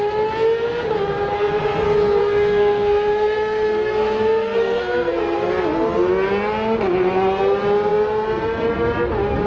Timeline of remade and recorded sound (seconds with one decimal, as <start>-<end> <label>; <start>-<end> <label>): 0.0-2.2 recorded; 2.2-5.5 remade; 5.5-9.5 recorded